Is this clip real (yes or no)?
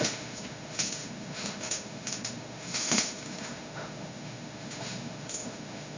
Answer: no